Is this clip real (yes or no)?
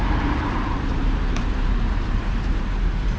no